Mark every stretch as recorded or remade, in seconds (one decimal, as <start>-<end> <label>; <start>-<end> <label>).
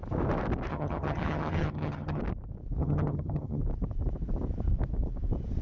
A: 0.0-0.7 recorded; 0.7-2.2 remade; 2.2-2.8 recorded; 2.8-3.6 remade; 3.6-5.6 recorded